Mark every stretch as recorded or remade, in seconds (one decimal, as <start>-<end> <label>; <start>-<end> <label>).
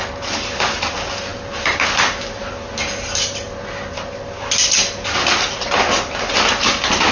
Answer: 0.0-7.1 recorded